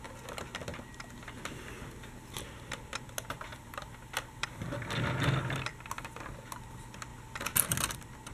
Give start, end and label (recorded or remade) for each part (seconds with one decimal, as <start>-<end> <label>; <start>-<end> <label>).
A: 0.0-3.5 recorded; 3.5-4.8 remade; 4.8-8.3 recorded